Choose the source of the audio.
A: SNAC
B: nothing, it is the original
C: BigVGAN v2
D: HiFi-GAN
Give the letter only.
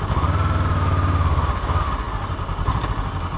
B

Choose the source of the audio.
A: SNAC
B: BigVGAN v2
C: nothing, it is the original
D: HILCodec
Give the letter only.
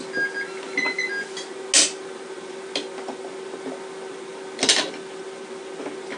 C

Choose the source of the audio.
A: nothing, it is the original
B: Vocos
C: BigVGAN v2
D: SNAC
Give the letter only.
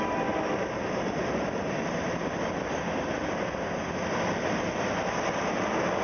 A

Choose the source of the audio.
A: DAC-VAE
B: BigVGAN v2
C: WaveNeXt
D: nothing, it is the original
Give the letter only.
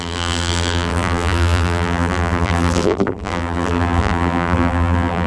B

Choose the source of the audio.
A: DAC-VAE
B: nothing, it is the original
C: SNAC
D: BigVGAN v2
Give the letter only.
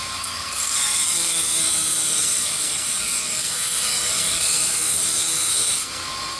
C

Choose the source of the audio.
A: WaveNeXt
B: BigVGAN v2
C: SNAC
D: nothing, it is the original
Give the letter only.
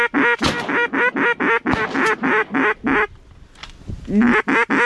D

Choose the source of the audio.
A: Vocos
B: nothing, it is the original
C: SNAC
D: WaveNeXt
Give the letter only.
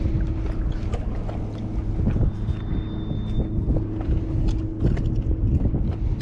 B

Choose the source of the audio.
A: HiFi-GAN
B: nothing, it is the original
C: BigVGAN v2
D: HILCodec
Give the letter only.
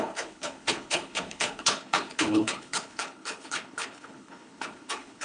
D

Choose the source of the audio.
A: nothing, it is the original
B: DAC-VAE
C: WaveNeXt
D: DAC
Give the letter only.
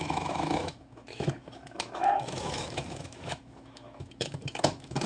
B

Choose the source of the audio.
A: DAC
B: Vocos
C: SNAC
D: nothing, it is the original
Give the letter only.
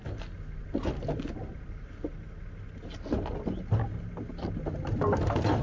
D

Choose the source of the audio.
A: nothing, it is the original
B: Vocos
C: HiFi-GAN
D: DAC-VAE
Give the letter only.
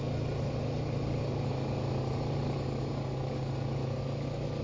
A